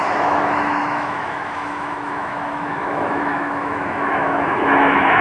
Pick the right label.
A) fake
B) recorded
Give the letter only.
A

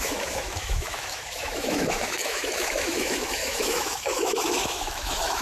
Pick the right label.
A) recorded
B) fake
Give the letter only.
B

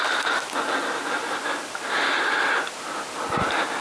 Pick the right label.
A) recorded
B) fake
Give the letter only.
A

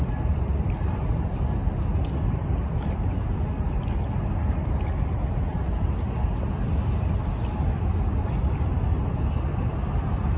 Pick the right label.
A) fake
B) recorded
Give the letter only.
B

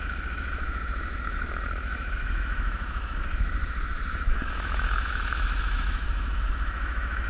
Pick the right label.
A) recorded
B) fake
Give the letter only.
B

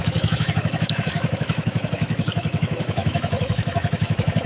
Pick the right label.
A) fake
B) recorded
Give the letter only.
A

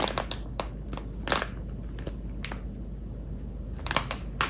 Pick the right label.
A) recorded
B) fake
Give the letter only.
A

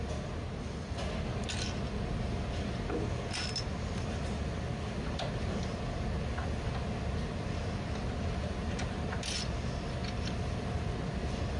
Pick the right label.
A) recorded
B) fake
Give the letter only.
A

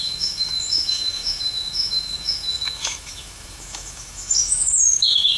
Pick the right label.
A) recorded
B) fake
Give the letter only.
B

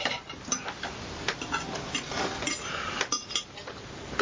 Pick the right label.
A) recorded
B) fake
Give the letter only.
A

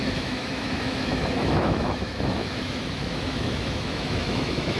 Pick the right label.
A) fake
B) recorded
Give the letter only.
A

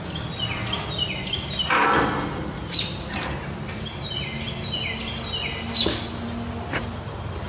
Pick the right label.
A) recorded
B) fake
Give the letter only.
A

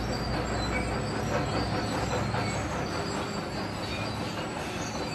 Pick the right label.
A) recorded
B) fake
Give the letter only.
A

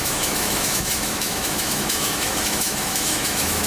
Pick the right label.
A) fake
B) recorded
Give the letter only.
A